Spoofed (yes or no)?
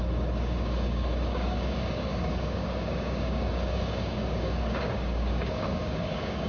yes